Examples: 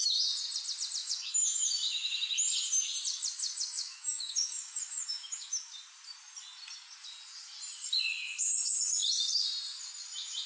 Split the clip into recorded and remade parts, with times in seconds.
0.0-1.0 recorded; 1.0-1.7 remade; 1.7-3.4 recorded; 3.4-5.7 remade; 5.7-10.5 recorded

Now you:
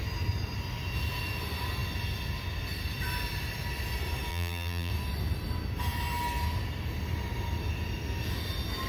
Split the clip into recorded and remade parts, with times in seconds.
0.0-4.3 recorded; 4.3-4.9 remade; 4.9-8.9 recorded

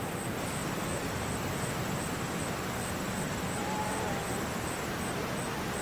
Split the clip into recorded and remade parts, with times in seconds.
0.0-5.8 recorded